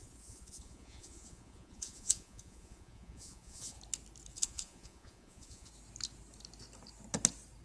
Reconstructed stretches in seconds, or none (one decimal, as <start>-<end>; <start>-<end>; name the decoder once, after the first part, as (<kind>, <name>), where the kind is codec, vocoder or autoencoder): 0.0-3.8 (vocoder, Vocos); 4.3-5.7